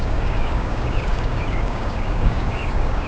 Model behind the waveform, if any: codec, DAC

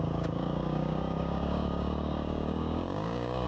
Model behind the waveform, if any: codec, DAC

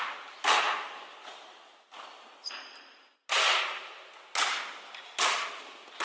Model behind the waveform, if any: none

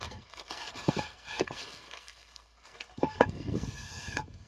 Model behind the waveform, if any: codec, SNAC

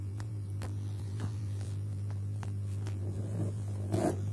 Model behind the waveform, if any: vocoder, BigVGAN v2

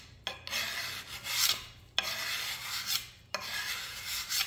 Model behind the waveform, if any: none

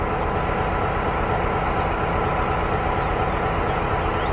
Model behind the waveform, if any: none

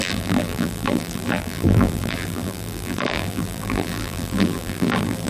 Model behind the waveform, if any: vocoder, BigVGAN v2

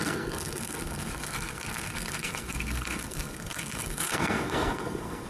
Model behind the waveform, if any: codec, SNAC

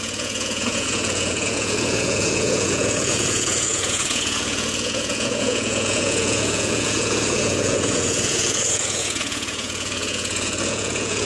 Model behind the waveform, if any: vocoder, Vocos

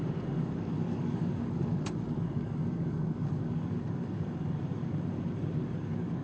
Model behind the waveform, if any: codec, DAC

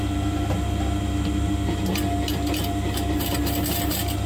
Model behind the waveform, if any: none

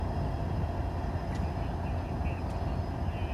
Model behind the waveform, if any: none